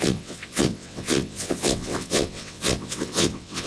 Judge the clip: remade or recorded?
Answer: remade